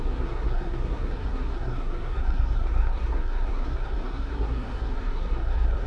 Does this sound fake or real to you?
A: fake